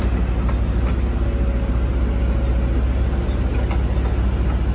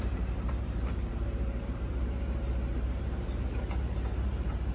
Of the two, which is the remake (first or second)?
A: second